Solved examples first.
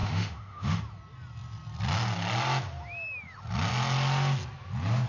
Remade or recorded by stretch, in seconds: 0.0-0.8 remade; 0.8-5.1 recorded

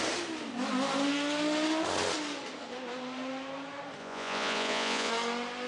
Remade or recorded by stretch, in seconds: 0.0-4.0 recorded; 4.0-5.1 remade; 5.1-5.7 recorded

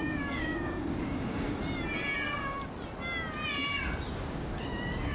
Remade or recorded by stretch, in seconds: 0.0-1.6 remade; 1.6-4.3 recorded; 4.3-5.1 remade